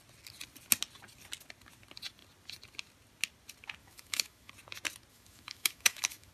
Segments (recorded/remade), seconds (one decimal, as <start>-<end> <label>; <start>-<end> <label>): 0.0-3.8 recorded; 3.8-4.5 remade; 4.5-5.1 recorded; 5.1-6.3 remade